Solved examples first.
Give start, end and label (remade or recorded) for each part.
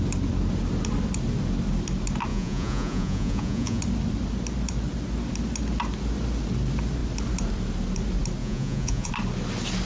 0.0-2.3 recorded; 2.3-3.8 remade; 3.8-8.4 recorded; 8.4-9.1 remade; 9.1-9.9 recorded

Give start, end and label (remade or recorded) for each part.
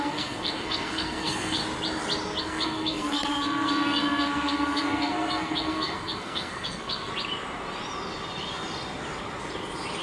0.0-1.6 remade; 1.6-2.4 recorded; 2.4-7.1 remade; 7.1-10.0 recorded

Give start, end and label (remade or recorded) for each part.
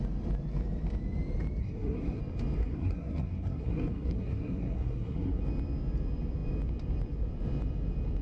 0.0-1.6 recorded; 1.6-2.2 remade; 2.2-2.6 recorded; 2.6-5.4 remade; 5.4-8.2 recorded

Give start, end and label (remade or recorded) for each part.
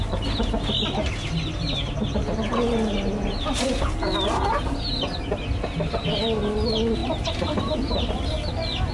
0.0-7.0 recorded; 7.0-8.1 remade; 8.1-8.9 recorded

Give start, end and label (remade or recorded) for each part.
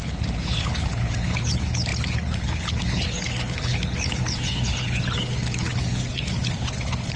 0.0-7.2 remade